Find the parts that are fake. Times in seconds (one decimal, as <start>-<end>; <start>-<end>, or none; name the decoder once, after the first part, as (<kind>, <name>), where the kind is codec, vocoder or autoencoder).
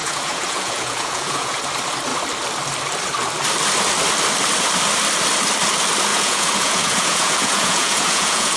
0.0-1.6 (vocoder, Vocos); 6.1-8.6